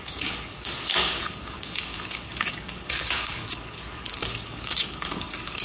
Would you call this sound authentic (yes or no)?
no